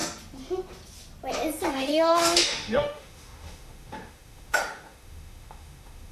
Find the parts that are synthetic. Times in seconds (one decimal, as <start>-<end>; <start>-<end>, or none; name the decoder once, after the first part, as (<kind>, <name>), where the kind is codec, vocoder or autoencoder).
1.7-6.1 (autoencoder, DAC-VAE)